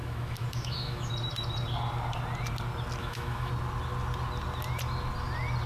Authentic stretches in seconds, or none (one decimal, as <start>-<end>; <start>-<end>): 1.1-3.0; 3.5-5.7